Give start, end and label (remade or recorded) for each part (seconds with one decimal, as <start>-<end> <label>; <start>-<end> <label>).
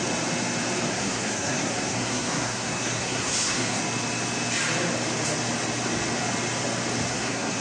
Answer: 0.0-0.9 recorded; 0.9-3.8 remade; 3.8-7.1 recorded; 7.1-7.6 remade